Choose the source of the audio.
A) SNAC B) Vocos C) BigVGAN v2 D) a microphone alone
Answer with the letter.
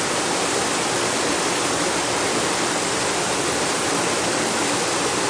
D